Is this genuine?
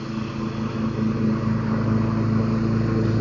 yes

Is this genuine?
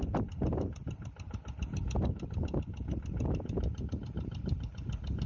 yes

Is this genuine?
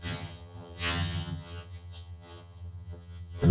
no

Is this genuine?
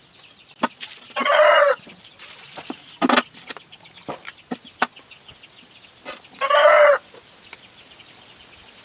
yes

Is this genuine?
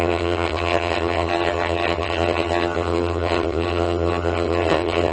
no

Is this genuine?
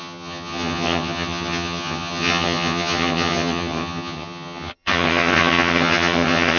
no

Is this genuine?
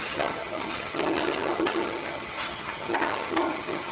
no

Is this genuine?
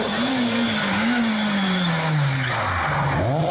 yes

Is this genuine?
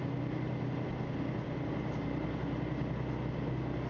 yes